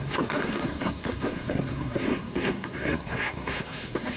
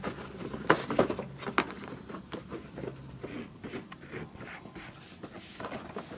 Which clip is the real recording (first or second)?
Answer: second